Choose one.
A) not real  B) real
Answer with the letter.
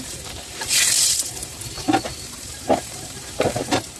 A